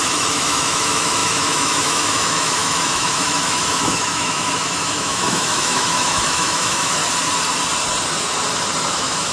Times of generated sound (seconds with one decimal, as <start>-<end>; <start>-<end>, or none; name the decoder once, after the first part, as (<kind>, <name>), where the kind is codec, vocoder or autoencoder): 0.0-7.0 (autoencoder, DAC-VAE); 8.9-9.3